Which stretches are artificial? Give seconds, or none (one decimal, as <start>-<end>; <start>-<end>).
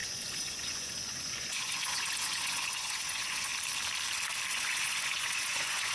0.0-3.5; 4.5-5.9